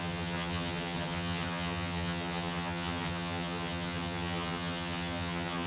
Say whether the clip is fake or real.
fake